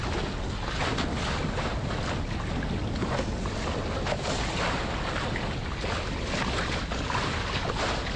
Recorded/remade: recorded